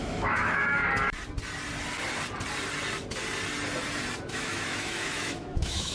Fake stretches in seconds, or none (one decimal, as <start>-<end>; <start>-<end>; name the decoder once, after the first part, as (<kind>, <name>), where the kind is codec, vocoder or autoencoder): 0.0-0.8 (autoencoder, DAC-VAE); 4.3-5.9